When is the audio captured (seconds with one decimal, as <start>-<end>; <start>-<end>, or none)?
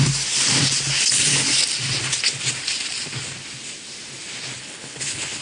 0.0-4.6